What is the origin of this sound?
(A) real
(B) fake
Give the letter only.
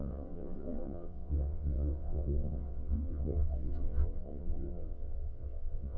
B